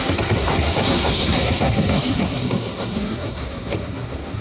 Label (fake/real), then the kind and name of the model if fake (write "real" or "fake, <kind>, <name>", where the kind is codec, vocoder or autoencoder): fake, codec, SNAC